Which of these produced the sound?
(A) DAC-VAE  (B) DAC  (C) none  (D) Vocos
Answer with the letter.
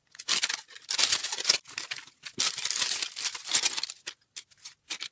C